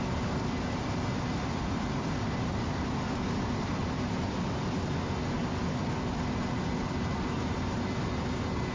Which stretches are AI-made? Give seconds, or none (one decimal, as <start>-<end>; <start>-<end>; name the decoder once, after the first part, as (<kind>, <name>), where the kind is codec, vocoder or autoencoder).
1.6-4.6 (vocoder, BigVGAN v2)